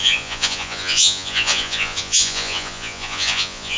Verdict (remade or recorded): remade